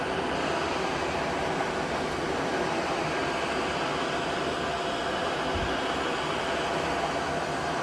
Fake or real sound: real